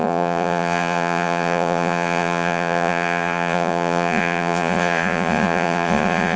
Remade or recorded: remade